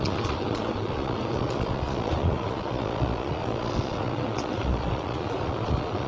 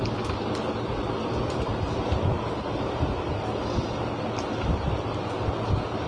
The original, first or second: second